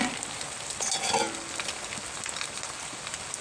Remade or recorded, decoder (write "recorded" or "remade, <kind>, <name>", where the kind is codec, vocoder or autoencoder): recorded